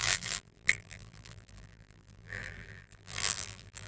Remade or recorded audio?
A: remade